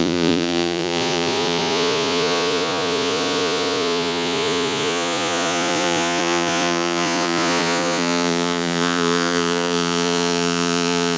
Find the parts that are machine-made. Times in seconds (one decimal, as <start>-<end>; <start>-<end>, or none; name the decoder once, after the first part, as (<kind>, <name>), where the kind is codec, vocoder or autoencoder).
0.0-11.2 (vocoder, Vocos)